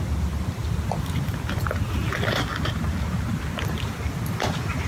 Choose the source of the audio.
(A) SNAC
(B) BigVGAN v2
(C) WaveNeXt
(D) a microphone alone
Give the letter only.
D